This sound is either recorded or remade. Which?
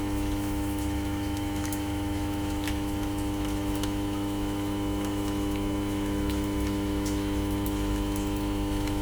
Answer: remade